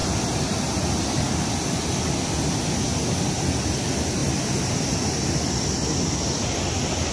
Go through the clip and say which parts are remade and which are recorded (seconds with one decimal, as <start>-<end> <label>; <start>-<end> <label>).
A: 0.0-7.1 recorded